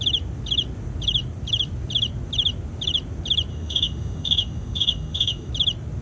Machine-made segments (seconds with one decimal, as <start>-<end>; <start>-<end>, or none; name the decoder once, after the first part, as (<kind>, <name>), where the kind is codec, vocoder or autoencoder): 3.5-5.5 (autoencoder, DAC-VAE)